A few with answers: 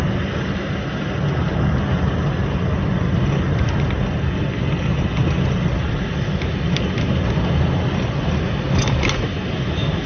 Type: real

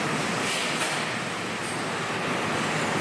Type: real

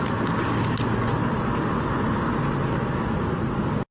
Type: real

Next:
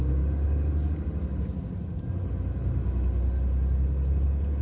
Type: real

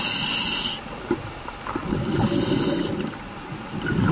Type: real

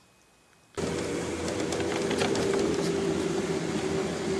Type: real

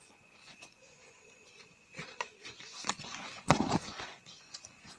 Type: fake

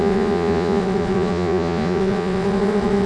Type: fake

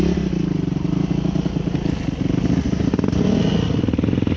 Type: real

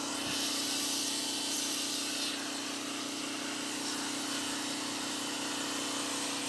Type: real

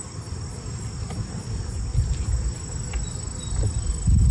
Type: real